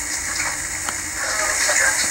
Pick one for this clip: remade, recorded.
remade